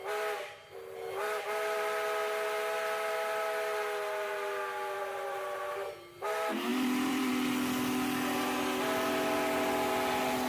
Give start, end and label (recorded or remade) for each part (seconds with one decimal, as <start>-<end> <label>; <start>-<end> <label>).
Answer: 0.0-6.7 recorded; 6.7-7.3 remade; 7.3-10.5 recorded